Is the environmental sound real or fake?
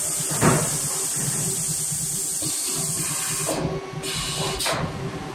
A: real